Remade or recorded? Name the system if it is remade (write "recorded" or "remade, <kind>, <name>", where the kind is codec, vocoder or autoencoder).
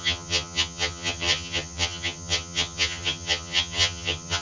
remade, vocoder, HiFi-GAN